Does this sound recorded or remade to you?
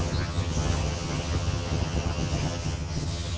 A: remade